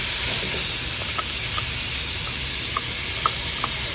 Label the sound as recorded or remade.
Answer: recorded